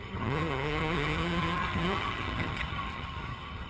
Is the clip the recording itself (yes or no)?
no